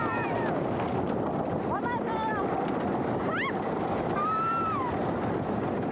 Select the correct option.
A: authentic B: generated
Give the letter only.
A